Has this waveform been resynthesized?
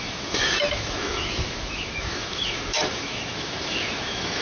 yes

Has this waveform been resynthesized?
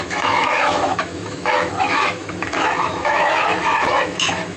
yes